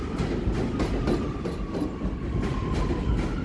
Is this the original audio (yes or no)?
yes